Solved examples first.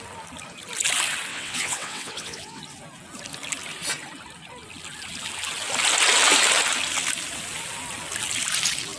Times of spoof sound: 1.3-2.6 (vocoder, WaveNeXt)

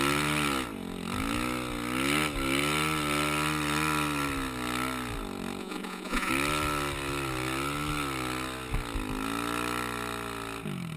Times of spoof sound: 5.6-6.3 (vocoder, Vocos)

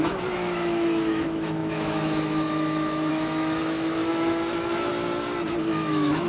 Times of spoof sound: 0.0-4.9 (autoencoder, DAC-VAE); 5.6-6.3

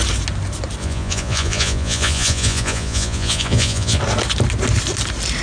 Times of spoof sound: 0.8-4.0 (vocoder, Vocos)

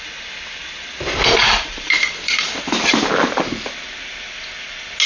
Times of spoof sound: 0.6-2.9 (vocoder, BigVGAN v2)